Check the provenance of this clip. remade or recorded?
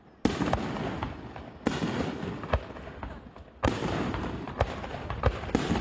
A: recorded